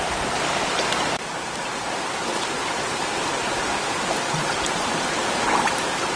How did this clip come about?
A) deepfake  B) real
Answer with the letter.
B